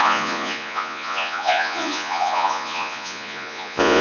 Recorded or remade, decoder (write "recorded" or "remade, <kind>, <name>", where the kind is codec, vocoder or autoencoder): remade, vocoder, Vocos